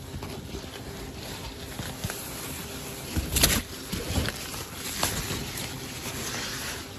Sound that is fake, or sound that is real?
real